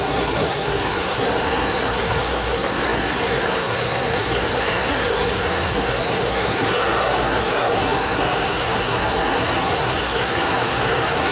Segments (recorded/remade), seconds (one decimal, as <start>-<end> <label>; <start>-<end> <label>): 0.0-11.3 remade